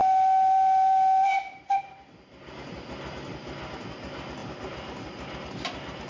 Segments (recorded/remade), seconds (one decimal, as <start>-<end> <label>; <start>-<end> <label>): 0.0-6.1 recorded